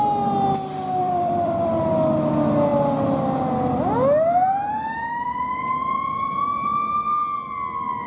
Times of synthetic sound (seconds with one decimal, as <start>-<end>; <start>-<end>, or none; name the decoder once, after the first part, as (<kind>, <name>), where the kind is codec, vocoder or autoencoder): 1.0-1.8 (vocoder, BigVGAN v2)

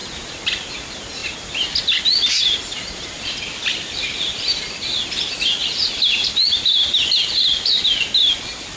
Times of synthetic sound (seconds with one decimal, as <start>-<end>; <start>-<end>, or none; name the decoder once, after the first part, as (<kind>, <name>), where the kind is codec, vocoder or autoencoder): none

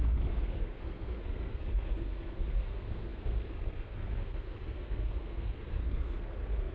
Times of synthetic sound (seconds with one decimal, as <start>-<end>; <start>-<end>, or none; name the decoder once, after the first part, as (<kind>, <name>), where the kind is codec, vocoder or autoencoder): 0.0-6.7 (codec, SNAC)

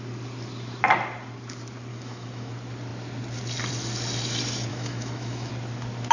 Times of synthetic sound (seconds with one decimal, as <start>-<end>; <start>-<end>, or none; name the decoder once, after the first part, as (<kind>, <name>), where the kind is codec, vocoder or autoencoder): 1.9-2.5 (autoencoder, DAC-VAE); 4.7-5.5

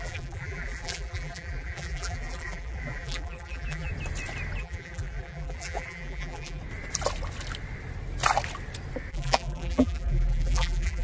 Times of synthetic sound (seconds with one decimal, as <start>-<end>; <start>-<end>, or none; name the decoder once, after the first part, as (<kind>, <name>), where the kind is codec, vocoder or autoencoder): 0.0-3.9 (vocoder, BigVGAN v2); 4.6-6.6; 9.1-11.0

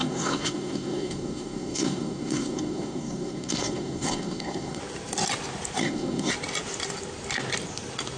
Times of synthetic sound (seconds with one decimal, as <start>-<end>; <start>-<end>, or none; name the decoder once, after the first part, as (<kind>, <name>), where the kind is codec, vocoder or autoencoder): 0.0-4.8 (codec, SNAC); 5.8-6.3

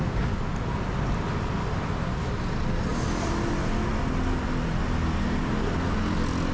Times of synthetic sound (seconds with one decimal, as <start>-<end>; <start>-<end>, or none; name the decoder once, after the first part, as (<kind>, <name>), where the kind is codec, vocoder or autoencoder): none